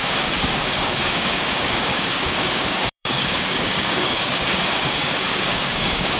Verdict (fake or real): fake